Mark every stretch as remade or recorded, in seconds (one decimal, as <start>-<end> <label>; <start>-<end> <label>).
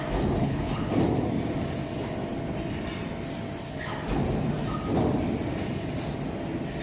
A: 0.0-0.4 recorded; 0.4-0.9 remade; 0.9-6.8 recorded